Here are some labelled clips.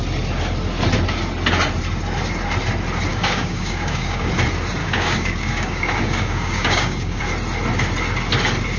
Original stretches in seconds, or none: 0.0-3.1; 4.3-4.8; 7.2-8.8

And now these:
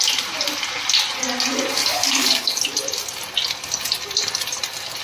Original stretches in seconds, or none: 0.0-1.8; 2.6-5.0

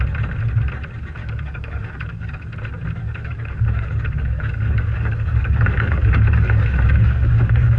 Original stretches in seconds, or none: 0.0-1.2; 2.5-3.0

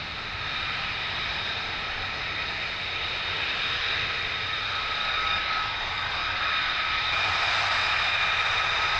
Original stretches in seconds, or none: 0.0-5.0; 6.4-9.0